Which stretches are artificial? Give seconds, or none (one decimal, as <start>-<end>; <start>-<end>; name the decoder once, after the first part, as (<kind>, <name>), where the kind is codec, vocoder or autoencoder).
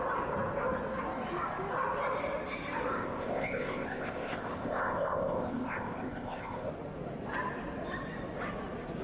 2.9-6.7 (codec, ZipCodec)